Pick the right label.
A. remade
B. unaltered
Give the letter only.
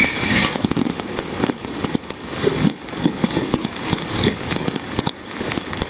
A